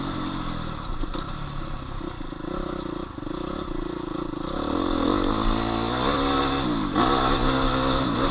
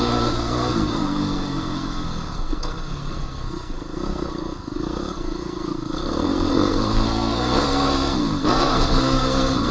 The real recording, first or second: first